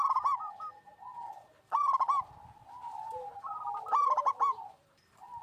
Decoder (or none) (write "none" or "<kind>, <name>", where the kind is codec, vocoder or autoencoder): vocoder, BigVGAN v2